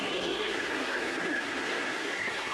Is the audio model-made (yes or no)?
yes